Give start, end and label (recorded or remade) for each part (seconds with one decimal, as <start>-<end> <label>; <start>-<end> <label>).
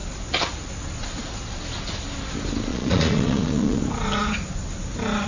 0.0-2.7 recorded; 2.7-3.8 remade; 3.8-5.3 recorded